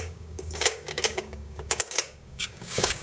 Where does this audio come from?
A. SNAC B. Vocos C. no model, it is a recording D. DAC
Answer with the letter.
D